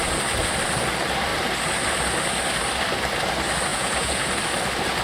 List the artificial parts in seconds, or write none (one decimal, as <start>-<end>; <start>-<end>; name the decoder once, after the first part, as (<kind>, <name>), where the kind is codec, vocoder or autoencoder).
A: 3.7-4.3 (vocoder, Vocos)